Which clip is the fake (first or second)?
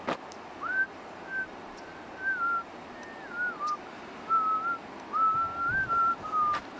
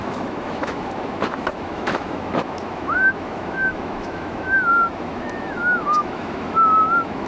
second